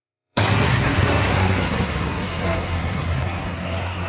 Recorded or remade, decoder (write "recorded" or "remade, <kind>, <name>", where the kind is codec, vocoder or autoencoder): remade, codec, SNAC